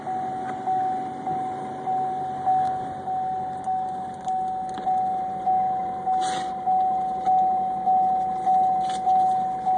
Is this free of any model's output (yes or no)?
yes